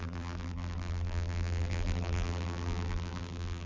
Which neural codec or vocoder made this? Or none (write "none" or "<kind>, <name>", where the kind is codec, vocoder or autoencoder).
vocoder, BigVGAN v2